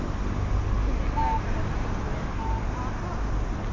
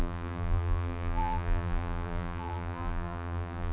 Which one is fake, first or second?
second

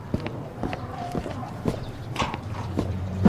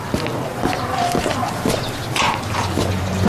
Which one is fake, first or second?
first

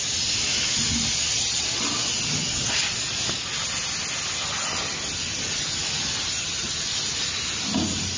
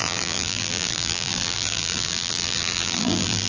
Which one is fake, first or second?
second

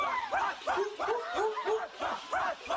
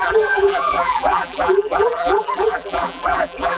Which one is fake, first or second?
second